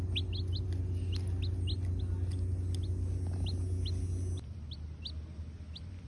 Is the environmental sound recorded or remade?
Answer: recorded